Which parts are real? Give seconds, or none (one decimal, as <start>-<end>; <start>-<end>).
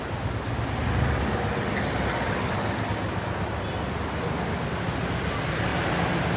0.0-6.4